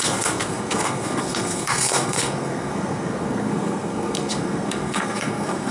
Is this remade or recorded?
remade